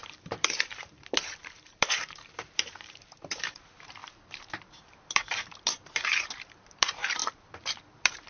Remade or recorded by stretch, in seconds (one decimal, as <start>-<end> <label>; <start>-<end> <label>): 0.0-8.3 remade